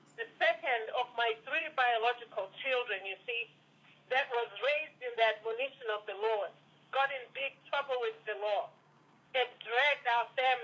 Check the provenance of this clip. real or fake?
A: fake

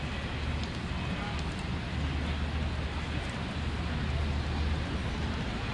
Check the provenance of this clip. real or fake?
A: real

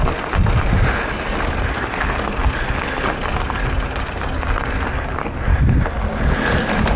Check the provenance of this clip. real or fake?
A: real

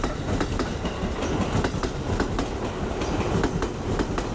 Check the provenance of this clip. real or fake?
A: real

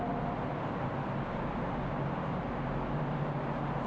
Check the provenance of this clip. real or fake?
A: real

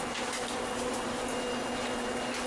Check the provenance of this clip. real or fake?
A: real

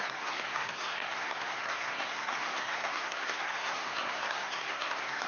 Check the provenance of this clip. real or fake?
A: fake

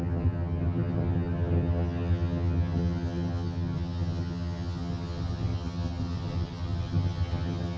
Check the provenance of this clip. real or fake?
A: fake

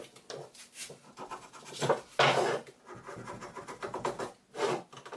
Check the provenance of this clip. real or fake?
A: real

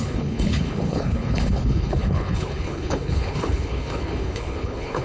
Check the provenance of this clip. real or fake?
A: fake